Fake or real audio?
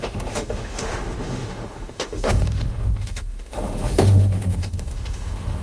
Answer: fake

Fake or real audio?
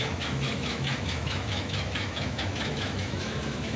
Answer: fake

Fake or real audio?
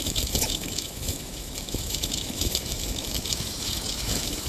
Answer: fake